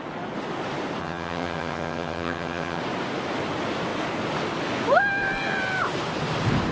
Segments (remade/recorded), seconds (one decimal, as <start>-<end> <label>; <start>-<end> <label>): 0.0-1.0 recorded; 1.0-2.8 remade; 2.8-6.7 recorded